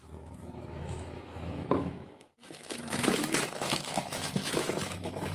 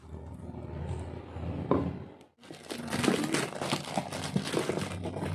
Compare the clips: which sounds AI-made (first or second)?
first